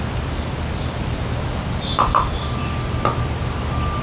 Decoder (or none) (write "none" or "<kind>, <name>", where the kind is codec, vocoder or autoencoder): none